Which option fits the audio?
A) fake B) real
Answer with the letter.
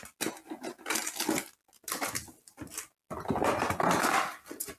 B